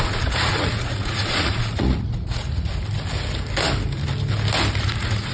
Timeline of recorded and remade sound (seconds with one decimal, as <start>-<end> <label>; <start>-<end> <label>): 0.0-2.7 remade; 2.7-4.8 recorded; 4.8-5.3 remade

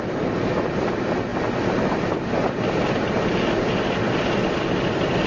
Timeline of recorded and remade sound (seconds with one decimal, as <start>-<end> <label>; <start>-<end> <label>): 0.0-5.3 recorded

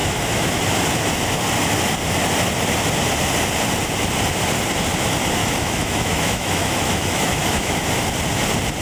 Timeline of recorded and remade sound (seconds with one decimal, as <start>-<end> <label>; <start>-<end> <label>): 0.0-0.6 remade; 0.6-5.4 recorded; 5.4-7.8 remade; 7.8-8.8 recorded

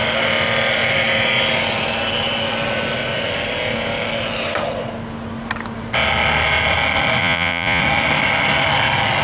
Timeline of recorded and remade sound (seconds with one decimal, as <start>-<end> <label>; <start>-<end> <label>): 0.0-7.2 recorded; 7.2-7.8 remade; 7.8-9.2 recorded

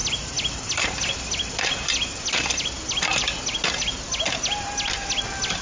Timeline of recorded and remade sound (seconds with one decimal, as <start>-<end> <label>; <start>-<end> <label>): 0.0-5.6 recorded

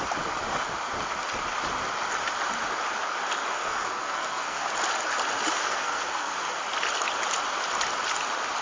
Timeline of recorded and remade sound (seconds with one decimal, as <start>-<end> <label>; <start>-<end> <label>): 0.0-3.5 recorded; 3.5-4.7 remade; 4.7-5.6 recorded; 5.6-6.6 remade; 6.6-8.6 recorded